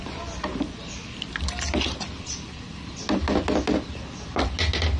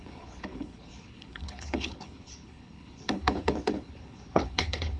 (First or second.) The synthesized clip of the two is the second